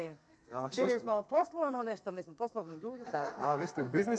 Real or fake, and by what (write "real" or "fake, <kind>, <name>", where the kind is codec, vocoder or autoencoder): fake, codec, SNAC